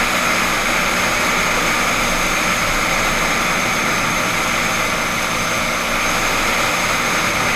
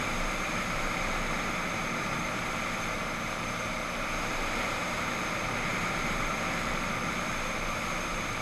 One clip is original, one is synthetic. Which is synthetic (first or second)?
second